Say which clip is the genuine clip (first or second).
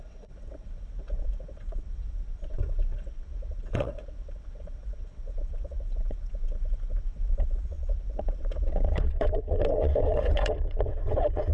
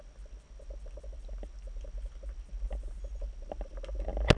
second